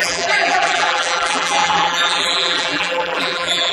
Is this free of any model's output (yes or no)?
no